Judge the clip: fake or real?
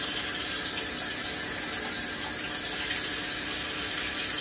real